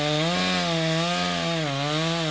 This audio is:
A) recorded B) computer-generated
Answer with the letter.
A